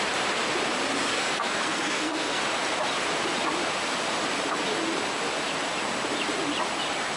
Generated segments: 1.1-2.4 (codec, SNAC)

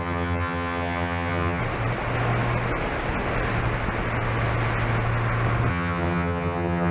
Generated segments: 0.0-1.6 (vocoder, HiFi-GAN); 5.7-6.9

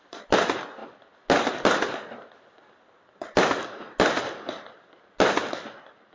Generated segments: none

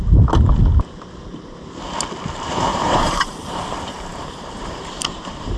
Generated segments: 2.7-3.5 (vocoder, BigVGAN v2); 4.1-5.6